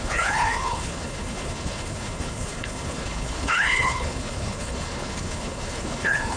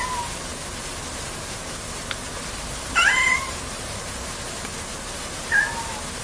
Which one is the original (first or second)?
second